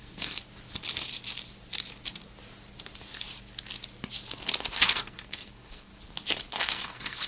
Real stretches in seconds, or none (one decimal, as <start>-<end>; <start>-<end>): 0.4-4.8; 5.9-6.5